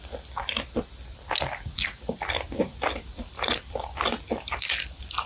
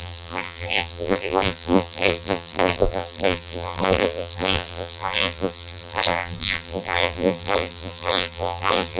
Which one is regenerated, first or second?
second